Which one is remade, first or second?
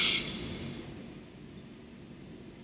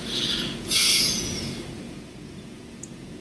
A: second